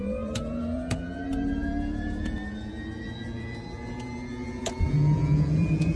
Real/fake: fake